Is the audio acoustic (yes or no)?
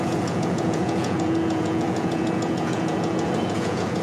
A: no